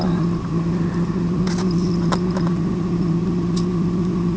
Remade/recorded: recorded